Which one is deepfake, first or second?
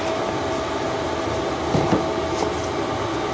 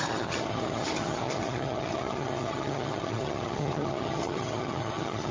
second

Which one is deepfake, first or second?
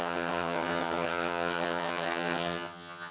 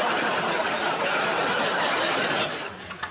first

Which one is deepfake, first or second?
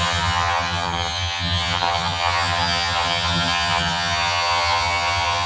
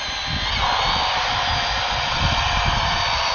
first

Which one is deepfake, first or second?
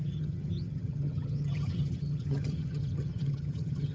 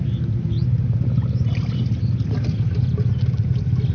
first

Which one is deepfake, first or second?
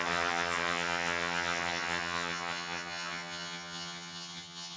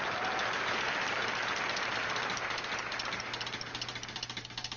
first